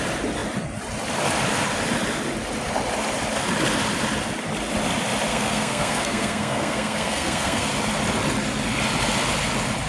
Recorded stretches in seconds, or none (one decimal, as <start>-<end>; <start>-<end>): 0.0-5.3; 7.7-9.9